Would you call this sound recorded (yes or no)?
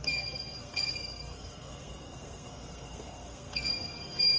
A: no